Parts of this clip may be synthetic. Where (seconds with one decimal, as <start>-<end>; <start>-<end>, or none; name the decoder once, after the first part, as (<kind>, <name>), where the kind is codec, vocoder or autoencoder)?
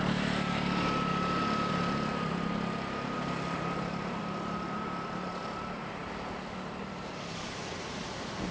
0.0-1.1 (vocoder, BigVGAN v2); 1.7-6.0; 6.8-8.5